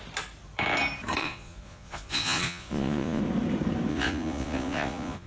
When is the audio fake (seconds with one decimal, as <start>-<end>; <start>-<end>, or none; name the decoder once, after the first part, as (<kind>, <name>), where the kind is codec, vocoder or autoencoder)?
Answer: 1.2-3.2 (vocoder, Vocos); 3.9-5.3